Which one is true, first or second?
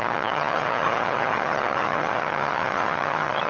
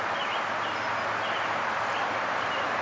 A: second